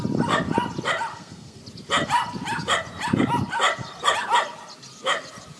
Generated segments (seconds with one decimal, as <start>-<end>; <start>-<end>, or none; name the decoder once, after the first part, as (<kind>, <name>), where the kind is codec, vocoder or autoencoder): 1.1-1.6 (codec, SNAC)